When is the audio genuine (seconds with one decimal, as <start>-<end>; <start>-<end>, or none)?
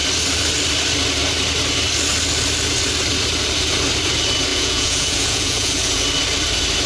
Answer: 0.0-4.5; 6.0-6.9